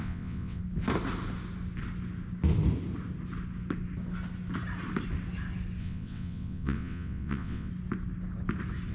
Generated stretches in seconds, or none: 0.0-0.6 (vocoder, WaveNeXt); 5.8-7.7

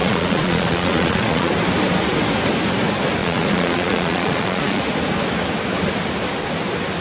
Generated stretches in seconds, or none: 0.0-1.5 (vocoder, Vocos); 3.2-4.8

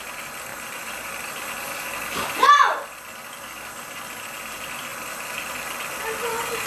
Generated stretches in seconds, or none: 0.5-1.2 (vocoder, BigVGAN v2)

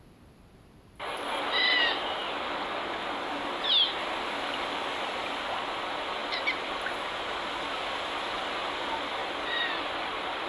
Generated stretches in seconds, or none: none

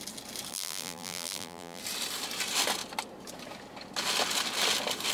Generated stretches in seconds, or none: 0.5-1.8 (vocoder, BigVGAN v2)

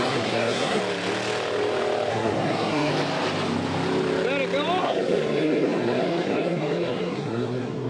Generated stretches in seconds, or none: 0.0-0.8 (codec, SNAC); 2.1-2.9; 4.8-7.9